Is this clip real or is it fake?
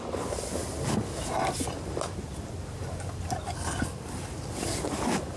real